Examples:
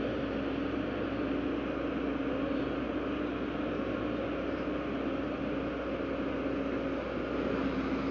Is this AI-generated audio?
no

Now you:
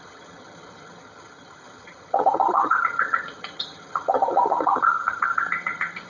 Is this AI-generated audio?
yes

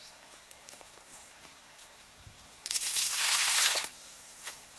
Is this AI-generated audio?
yes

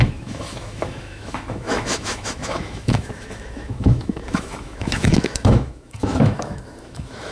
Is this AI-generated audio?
yes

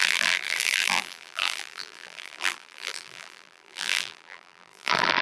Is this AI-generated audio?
yes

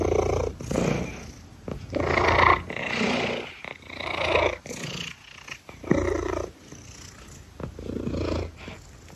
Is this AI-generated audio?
no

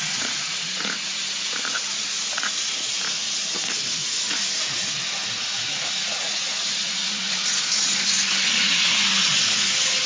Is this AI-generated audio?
yes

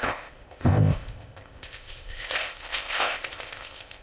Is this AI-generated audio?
yes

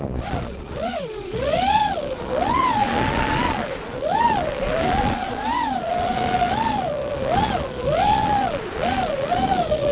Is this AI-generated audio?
yes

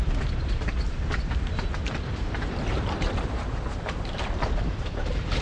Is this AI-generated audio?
yes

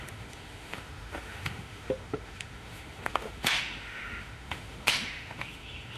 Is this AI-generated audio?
yes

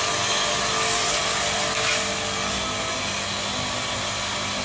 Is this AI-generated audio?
no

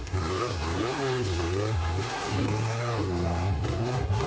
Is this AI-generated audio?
yes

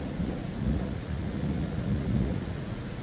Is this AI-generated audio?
yes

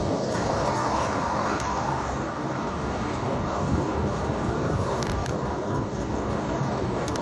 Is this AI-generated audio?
yes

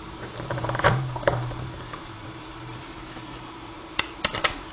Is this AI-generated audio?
yes